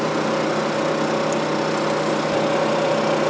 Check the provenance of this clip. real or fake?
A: real